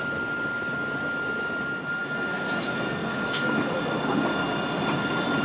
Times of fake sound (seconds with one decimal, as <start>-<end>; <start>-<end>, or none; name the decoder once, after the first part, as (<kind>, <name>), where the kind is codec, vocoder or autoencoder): 2.0-2.6 (autoencoder, DAC-VAE); 3.1-3.7